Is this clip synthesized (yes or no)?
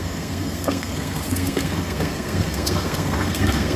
yes